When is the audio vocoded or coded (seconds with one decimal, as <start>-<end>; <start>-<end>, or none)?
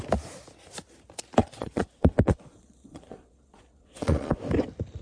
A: 1.4-4.4